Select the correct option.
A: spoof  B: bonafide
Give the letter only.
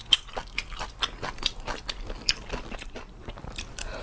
B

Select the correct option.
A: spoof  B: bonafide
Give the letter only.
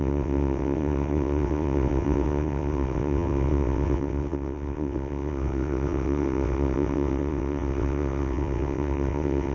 A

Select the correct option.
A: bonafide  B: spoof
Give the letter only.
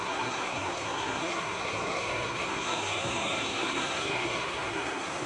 B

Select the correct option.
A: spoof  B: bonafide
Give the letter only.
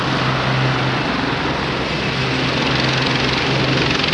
B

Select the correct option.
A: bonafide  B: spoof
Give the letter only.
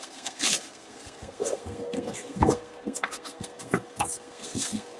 B